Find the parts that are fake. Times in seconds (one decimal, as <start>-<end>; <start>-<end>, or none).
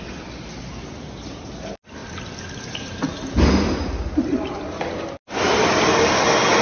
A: none